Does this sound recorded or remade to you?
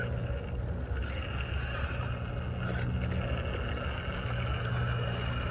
recorded